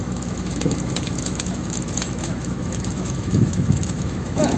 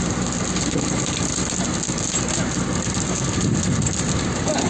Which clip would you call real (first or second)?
second